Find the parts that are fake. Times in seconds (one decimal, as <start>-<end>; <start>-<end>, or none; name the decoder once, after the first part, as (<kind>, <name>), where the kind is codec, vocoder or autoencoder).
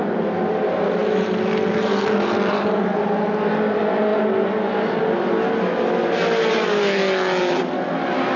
none